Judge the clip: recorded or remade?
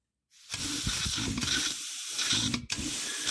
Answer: recorded